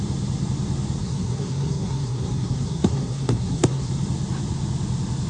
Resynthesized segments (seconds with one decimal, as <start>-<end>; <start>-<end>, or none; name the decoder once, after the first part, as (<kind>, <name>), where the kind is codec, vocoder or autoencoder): 1.0-3.9 (codec, SNAC)